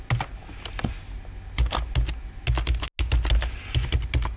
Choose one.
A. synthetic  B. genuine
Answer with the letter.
B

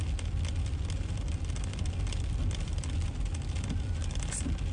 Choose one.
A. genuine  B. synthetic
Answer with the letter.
A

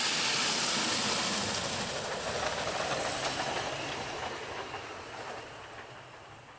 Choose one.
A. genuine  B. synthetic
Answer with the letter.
A